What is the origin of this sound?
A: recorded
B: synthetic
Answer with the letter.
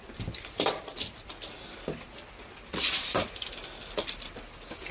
A